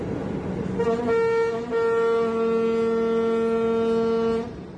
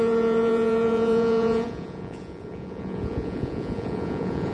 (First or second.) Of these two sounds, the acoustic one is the first